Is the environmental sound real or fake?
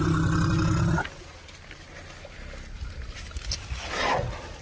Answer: real